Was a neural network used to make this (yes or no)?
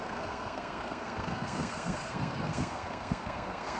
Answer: yes